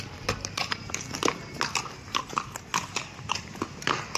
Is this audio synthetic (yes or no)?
no